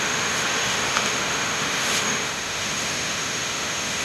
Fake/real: fake